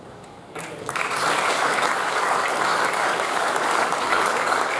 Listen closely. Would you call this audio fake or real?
fake